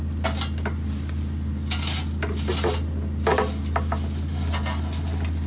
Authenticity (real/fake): real